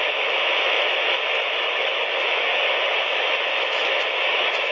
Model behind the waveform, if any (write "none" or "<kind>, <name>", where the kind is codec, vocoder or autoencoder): autoencoder, DAC-VAE